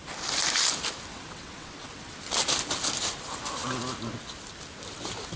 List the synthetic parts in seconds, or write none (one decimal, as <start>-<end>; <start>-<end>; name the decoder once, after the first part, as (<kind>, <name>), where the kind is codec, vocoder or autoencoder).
1.1-2.1 (vocoder, WaveNeXt)